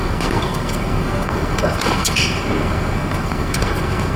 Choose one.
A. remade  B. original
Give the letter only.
A